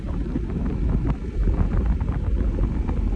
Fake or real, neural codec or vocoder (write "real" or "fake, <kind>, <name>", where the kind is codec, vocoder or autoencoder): real